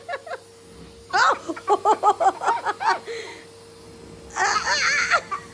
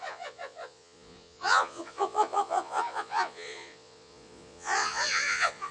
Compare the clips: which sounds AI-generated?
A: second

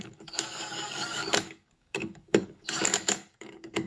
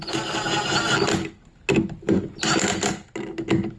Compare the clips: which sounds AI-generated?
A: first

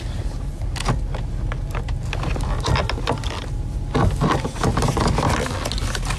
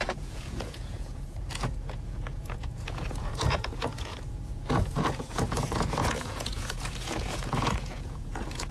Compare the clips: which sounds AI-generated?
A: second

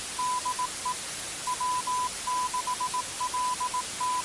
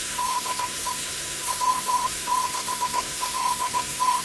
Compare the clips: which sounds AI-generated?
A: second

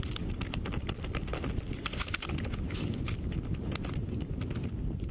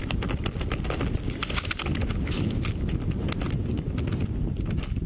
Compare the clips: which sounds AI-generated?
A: first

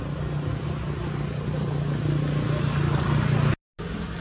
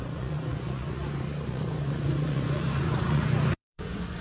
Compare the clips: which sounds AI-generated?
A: second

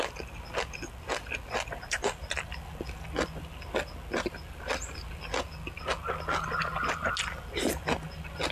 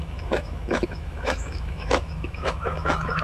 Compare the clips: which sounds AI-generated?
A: second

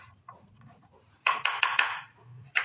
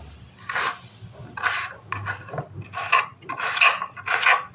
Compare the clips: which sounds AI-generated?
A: first